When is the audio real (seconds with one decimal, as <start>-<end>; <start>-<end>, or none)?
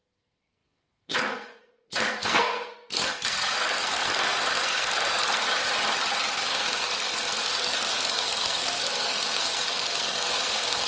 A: 5.4-6.5